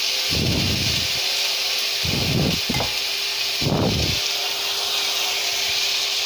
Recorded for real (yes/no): no